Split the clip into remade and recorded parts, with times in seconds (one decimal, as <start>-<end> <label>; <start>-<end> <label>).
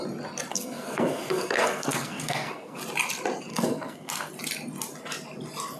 0.0-0.5 recorded; 0.5-2.8 remade; 2.8-3.5 recorded; 3.5-4.3 remade; 4.3-5.8 recorded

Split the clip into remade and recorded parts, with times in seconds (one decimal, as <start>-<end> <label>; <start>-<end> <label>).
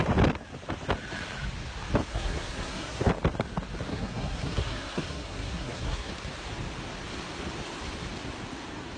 0.0-2.1 recorded; 2.1-3.1 remade; 3.1-3.9 recorded; 3.9-6.1 remade; 6.1-9.0 recorded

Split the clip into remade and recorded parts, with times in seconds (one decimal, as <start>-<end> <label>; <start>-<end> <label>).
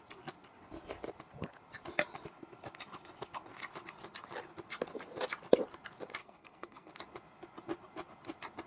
0.0-6.2 recorded; 6.2-6.9 remade; 6.9-8.7 recorded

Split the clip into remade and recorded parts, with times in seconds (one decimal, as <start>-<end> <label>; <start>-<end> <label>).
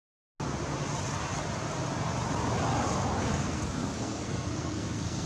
0.0-3.2 recorded; 3.2-5.3 remade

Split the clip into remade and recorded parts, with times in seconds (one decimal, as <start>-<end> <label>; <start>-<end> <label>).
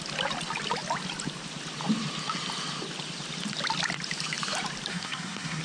0.0-4.9 recorded; 4.9-5.6 remade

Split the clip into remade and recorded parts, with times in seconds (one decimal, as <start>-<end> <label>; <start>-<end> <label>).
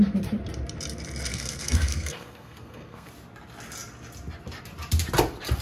0.0-1.3 recorded; 1.3-3.1 remade; 3.1-5.6 recorded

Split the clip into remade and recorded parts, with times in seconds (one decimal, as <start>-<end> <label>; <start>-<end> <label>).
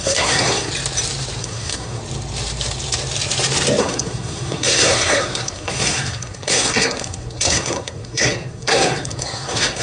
0.0-0.7 remade; 0.7-1.4 recorded; 1.4-2.0 remade; 2.0-3.8 recorded; 3.8-9.8 remade